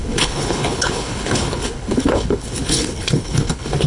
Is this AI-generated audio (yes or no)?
yes